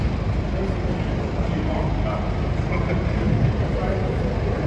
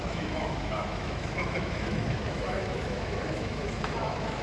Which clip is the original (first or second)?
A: first